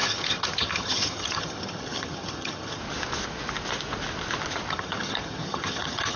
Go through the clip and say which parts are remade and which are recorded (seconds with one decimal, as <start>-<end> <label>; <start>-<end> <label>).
0.0-2.8 remade; 2.8-4.7 recorded; 4.7-6.2 remade